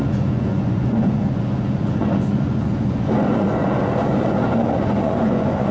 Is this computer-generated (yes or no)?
yes